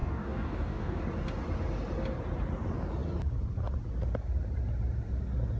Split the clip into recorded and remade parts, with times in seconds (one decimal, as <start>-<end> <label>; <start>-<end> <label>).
0.0-1.0 remade; 1.0-5.6 recorded